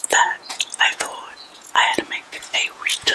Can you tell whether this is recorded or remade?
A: remade